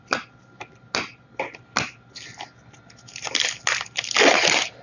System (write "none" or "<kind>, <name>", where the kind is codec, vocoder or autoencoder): none